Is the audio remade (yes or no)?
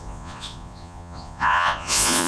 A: yes